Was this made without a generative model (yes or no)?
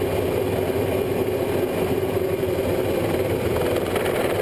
yes